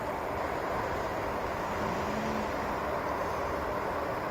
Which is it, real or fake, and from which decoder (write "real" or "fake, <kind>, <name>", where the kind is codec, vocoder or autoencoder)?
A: real